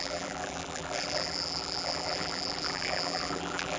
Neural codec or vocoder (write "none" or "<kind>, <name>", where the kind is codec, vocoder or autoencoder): vocoder, BigVGAN v2